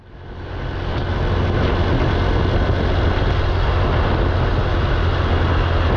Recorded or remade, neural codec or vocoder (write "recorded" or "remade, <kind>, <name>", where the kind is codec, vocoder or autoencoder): recorded